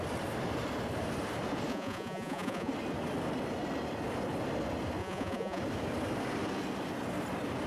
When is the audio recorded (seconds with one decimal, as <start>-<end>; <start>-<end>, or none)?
0.0-1.7; 2.7-5.0; 5.6-7.7